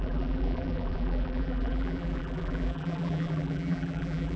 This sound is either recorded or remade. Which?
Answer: remade